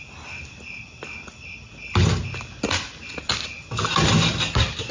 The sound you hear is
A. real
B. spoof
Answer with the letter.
A